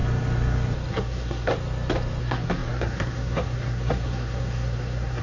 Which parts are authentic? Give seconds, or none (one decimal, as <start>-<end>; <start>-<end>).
0.0-0.9; 1.5-2.2